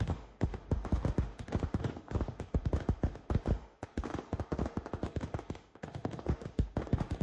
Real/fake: fake